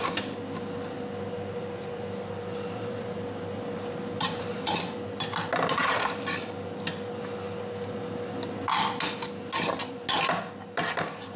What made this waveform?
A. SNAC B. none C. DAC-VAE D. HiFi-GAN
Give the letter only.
B